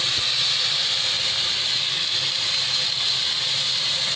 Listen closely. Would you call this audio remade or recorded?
recorded